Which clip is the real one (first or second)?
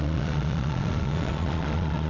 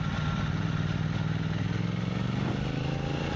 second